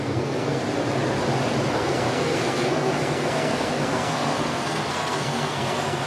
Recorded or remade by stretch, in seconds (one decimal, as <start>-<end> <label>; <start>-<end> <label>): 0.0-0.6 remade; 0.6-1.7 recorded; 1.7-6.1 remade